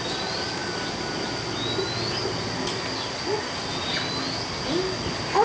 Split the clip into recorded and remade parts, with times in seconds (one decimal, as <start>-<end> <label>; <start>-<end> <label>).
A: 0.0-5.4 recorded